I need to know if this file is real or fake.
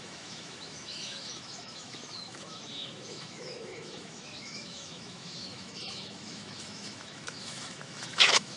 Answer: fake